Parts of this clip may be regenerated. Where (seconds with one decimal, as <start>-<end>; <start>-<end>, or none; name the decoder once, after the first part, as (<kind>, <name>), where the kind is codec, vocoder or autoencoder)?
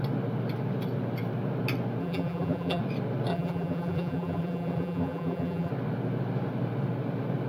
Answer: 2.0-2.8 (vocoder, BigVGAN v2); 3.3-5.7